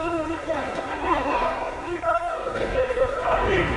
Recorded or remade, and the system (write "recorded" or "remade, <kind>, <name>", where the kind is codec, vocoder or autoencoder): remade, codec, SNAC